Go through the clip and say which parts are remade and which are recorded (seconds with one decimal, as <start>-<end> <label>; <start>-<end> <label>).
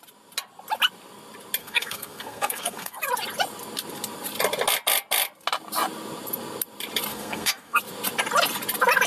0.0-1.6 recorded; 1.6-3.0 remade; 3.0-7.1 recorded; 7.1-7.8 remade; 7.8-9.1 recorded